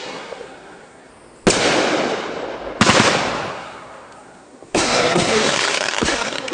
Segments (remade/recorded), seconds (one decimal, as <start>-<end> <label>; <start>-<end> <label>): 0.0-1.1 remade; 1.1-3.5 recorded; 3.5-6.5 remade